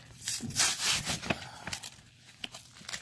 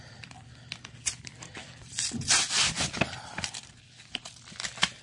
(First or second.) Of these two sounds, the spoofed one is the second